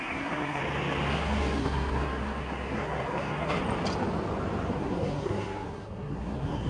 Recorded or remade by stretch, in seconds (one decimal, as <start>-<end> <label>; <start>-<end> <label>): 0.0-0.6 remade; 0.6-1.1 recorded; 1.1-3.6 remade; 3.6-4.7 recorded; 4.7-6.7 remade